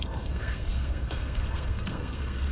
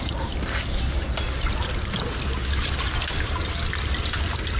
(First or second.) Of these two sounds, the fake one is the first